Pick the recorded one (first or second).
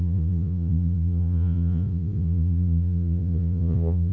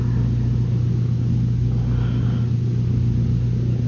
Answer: second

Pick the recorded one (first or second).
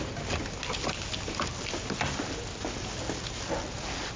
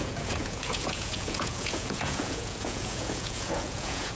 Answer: first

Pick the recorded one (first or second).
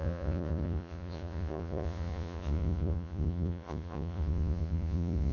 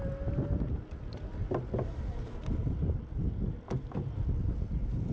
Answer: second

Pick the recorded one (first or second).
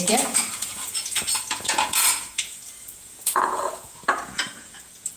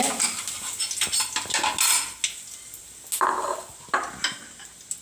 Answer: second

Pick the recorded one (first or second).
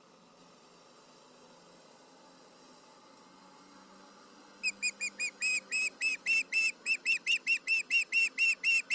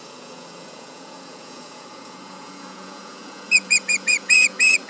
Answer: first